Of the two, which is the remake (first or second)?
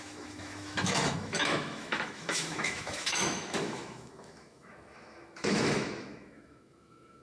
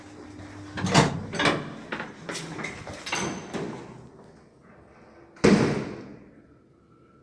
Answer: first